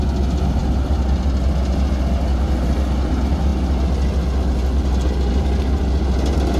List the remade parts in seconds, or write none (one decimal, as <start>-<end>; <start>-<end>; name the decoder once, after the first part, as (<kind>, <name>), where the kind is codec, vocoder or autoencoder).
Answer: none